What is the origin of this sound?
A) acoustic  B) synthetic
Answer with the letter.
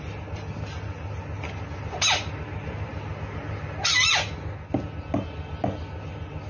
A